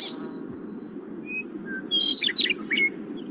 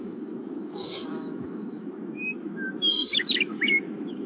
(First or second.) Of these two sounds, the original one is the first